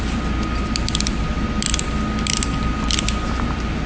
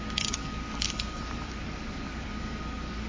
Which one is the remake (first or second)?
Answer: second